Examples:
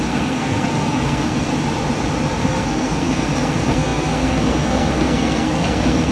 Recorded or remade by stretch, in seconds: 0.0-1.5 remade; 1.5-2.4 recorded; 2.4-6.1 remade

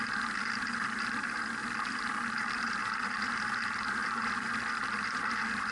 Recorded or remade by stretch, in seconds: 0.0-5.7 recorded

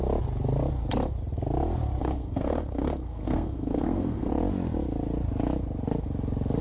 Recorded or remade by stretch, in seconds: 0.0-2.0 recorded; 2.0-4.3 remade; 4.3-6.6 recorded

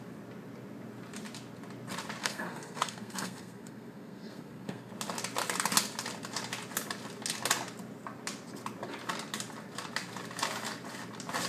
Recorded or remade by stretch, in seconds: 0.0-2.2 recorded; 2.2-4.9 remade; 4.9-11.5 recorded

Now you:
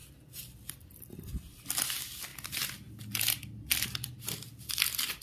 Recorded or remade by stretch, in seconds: 0.0-5.2 recorded